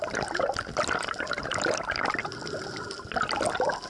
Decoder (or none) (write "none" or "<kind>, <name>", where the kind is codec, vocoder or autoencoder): none